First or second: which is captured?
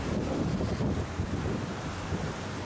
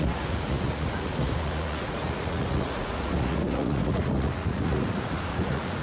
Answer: first